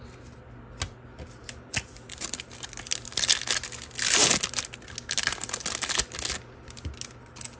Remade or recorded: recorded